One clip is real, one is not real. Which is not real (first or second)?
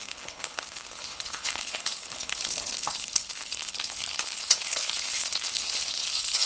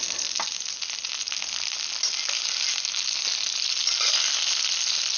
first